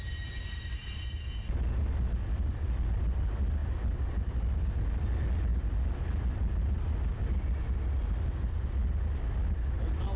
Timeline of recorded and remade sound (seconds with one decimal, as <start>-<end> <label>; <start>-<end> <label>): 0.0-10.2 recorded